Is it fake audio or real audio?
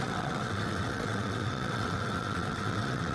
fake